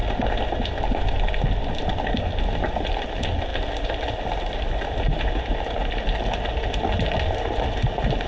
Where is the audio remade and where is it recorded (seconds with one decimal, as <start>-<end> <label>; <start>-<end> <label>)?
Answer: 0.0-8.3 recorded